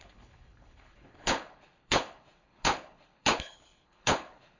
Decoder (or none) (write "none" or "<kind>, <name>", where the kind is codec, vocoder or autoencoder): codec, HILCodec